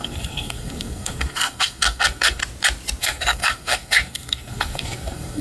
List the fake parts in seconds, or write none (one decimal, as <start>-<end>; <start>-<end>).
0.0-2.4; 3.0-5.4